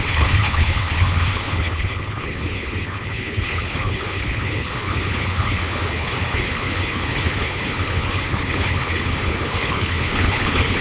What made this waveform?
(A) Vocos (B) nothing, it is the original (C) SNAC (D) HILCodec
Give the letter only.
D